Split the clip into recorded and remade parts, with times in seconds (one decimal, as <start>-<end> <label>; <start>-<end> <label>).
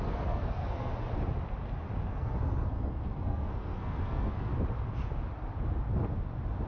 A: 0.0-0.9 remade; 0.9-2.1 recorded; 2.1-4.5 remade; 4.5-6.7 recorded